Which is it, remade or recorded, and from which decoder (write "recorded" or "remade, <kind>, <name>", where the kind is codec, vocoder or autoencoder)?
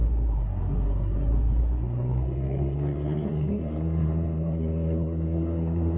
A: remade, codec, SNAC